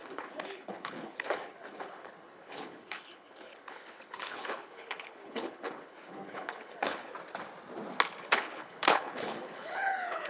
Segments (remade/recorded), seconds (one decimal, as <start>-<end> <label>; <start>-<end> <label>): 0.0-7.1 remade; 7.1-8.2 recorded; 8.2-10.3 remade